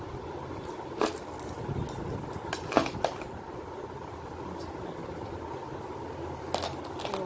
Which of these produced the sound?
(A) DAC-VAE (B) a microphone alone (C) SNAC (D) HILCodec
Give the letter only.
B